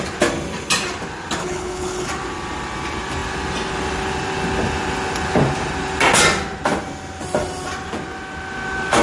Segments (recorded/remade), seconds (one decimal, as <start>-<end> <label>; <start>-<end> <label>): 0.0-1.4 recorded; 1.4-2.1 remade; 2.1-9.0 recorded